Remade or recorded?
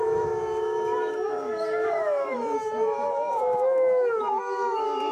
remade